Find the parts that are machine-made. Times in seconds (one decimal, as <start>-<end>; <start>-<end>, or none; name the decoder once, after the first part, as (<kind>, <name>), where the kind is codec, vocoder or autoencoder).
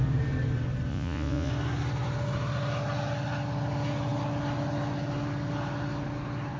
0.9-1.5 (vocoder, Vocos)